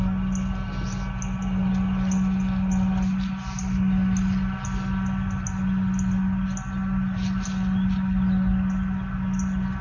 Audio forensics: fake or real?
real